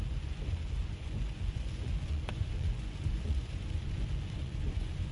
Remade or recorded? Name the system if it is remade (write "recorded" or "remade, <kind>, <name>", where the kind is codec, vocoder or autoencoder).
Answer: remade, vocoder, Vocos